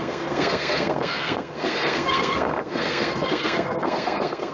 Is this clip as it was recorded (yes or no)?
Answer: no